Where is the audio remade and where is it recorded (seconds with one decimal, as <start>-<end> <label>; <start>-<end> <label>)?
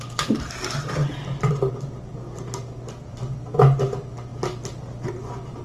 0.0-1.0 recorded; 1.0-1.5 remade; 1.5-5.6 recorded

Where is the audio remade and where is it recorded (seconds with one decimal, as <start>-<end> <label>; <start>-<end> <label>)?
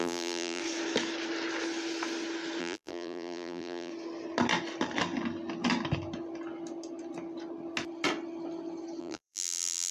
0.0-0.6 remade; 0.6-2.6 recorded; 2.6-3.9 remade; 3.9-9.0 recorded; 9.0-9.9 remade